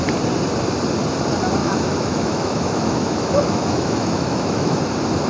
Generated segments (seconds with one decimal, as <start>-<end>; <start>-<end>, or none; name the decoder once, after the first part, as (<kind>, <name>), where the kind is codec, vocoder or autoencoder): 1.6-4.8 (autoencoder, DAC-VAE)